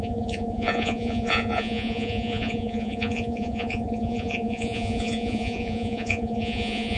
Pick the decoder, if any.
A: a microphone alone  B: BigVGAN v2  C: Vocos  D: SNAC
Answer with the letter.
C